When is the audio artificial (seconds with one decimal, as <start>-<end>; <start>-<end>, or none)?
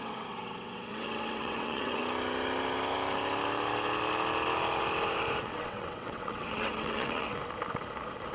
0.0-2.0; 5.4-7.4